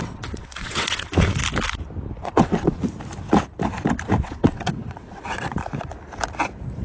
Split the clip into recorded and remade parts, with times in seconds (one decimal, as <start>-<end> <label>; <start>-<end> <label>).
0.0-1.4 remade; 1.4-2.2 recorded; 2.2-2.8 remade; 2.8-4.2 recorded; 4.2-5.6 remade; 5.6-6.8 recorded